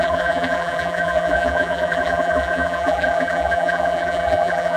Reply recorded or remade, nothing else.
remade